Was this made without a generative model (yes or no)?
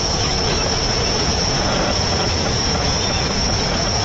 no